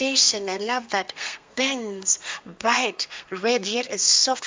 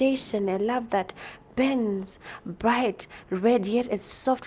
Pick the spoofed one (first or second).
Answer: first